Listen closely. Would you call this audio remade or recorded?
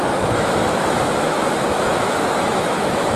remade